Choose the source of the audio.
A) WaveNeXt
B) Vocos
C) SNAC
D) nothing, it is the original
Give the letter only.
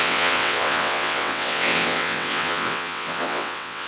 A